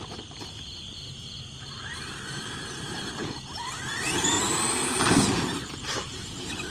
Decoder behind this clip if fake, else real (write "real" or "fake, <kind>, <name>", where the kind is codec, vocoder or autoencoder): fake, vocoder, BigVGAN v2